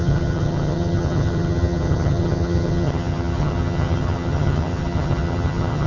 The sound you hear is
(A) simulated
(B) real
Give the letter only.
A